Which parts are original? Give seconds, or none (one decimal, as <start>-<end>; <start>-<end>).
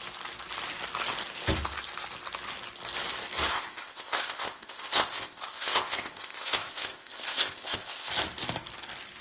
0.0-3.5; 8.1-9.2